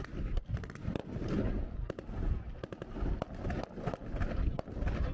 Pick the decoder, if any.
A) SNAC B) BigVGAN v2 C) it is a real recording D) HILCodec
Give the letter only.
C